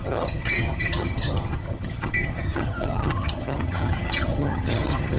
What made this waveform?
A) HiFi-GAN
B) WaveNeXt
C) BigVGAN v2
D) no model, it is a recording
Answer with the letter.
A